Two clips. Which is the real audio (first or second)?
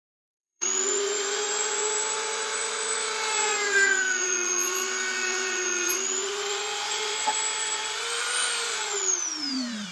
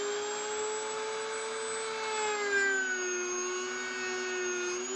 second